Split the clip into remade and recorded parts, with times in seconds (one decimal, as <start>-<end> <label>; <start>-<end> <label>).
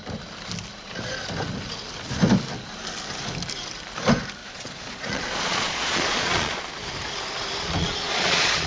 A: 0.0-4.4 recorded; 4.4-6.6 remade; 6.6-7.8 recorded; 7.8-8.7 remade